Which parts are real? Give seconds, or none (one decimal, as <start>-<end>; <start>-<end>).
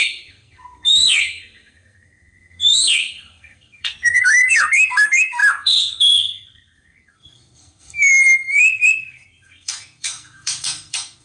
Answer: none